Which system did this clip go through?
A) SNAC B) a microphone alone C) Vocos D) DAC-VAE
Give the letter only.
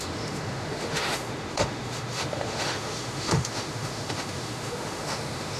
D